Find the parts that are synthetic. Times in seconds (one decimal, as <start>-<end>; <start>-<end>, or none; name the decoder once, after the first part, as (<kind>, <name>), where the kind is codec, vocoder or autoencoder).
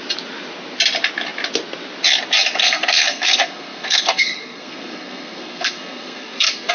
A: 2.6-6.7 (codec, SNAC)